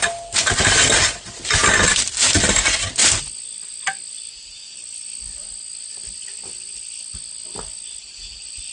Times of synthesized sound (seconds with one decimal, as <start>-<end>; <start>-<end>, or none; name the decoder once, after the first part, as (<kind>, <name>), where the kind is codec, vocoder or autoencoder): 0.0-8.7 (vocoder, BigVGAN v2)